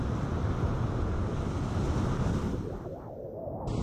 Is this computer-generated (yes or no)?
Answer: no